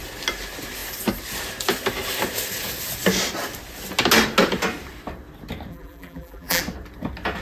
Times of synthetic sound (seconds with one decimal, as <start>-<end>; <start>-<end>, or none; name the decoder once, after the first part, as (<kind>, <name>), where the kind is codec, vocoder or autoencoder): 5.7-6.6 (vocoder, BigVGAN v2)